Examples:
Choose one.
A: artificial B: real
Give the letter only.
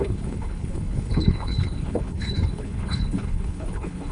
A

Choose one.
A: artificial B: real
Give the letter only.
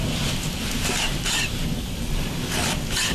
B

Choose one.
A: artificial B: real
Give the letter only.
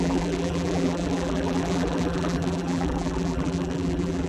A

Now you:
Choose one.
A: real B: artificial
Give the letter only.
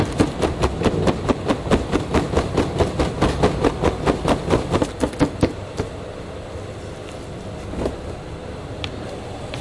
A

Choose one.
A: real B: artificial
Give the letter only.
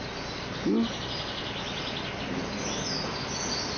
A